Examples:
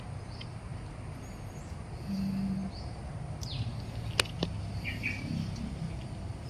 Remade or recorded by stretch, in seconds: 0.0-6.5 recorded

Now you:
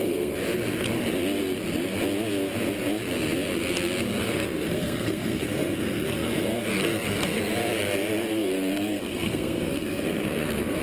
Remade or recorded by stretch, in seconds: 0.0-0.4 remade; 0.4-4.2 recorded; 4.2-7.5 remade; 7.5-8.3 recorded; 8.3-10.8 remade

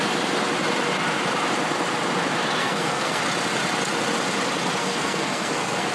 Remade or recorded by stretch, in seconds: 0.0-2.6 recorded; 2.6-3.2 remade; 3.2-4.8 recorded; 4.8-5.9 remade

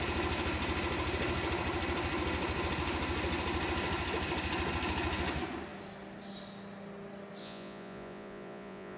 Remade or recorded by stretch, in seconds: 0.0-7.4 recorded; 7.4-9.0 remade

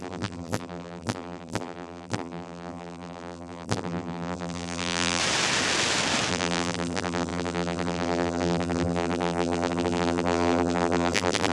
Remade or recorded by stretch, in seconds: 0.0-5.2 remade; 5.2-6.3 recorded; 6.3-11.5 remade

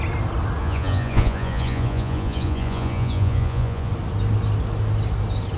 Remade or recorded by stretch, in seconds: 0.0-0.6 recorded; 0.6-3.9 remade; 3.9-5.6 recorded